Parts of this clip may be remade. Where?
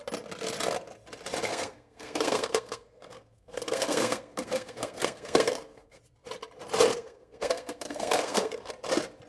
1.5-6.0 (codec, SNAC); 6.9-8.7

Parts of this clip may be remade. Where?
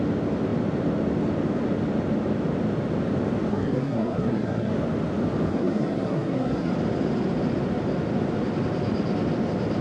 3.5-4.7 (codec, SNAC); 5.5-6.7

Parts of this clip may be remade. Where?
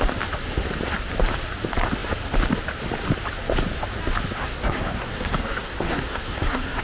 4.4-6.8 (codec, SNAC)